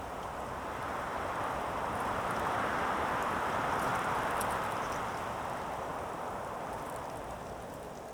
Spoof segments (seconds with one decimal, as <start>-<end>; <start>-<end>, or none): 1.1-5.0; 5.9-7.4